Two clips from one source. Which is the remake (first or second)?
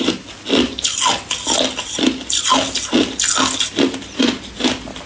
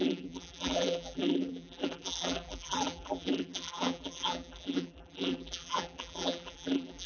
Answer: second